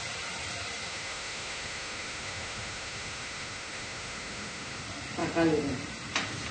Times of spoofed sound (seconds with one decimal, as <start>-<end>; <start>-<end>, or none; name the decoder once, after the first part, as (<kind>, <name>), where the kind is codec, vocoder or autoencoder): 0.9-4.8 (autoencoder, DAC-VAE)